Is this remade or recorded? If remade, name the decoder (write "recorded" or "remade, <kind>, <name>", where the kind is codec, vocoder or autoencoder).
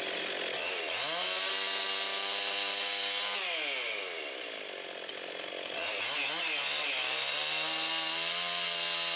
recorded